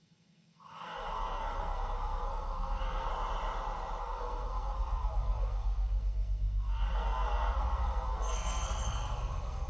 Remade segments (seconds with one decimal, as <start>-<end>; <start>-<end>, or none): 0.0-3.1; 4.0-9.7